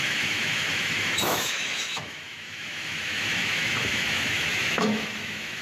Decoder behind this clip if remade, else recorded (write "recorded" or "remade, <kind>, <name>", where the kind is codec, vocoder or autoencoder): remade, autoencoder, DAC-VAE